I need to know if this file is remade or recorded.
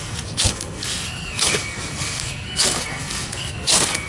remade